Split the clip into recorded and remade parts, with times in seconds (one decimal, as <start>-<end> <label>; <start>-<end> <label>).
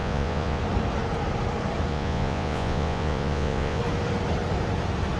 0.0-0.6 remade; 0.6-1.9 recorded; 1.9-3.8 remade; 3.8-5.2 recorded